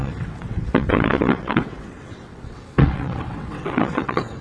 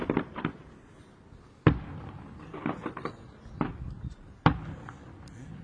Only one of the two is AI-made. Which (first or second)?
first